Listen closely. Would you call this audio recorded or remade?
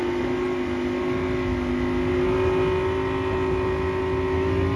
recorded